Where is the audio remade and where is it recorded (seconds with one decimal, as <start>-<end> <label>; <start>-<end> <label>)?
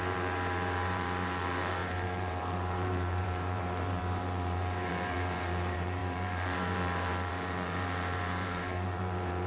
0.0-9.5 remade